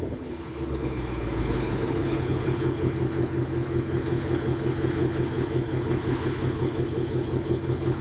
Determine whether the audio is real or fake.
fake